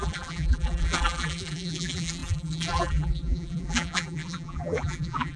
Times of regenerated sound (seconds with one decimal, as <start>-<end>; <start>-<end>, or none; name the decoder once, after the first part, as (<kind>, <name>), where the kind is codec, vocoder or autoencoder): 0.0-5.4 (vocoder, BigVGAN v2)